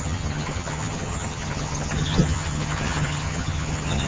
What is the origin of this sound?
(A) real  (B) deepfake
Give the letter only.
B